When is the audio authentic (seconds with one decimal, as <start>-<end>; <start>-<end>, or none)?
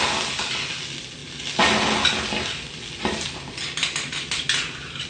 0.0-5.1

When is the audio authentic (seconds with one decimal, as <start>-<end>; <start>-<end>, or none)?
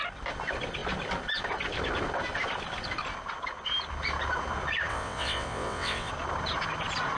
0.0-4.9; 6.1-7.2